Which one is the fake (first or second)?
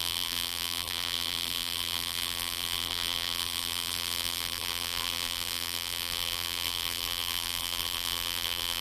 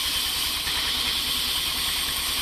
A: first